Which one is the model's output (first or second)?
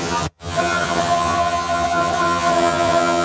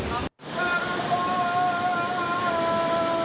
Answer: first